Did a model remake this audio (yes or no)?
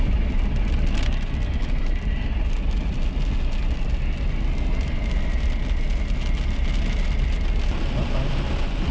no